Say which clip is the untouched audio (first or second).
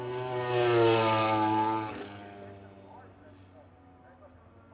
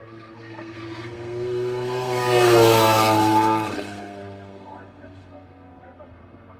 first